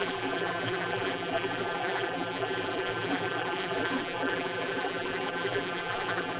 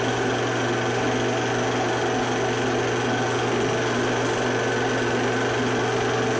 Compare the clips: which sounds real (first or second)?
second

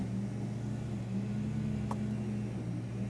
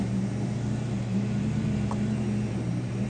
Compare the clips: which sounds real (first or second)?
first